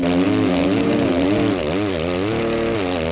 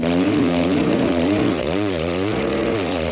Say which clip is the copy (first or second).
second